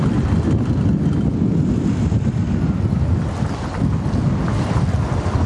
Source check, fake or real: real